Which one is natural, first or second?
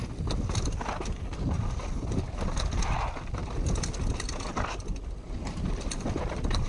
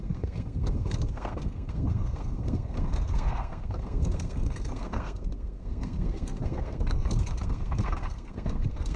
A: first